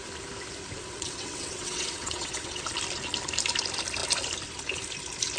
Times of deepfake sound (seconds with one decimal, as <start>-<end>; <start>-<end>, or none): 0.9-2.6